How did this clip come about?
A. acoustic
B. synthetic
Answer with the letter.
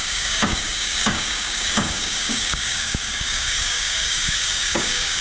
B